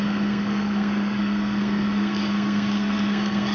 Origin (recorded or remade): remade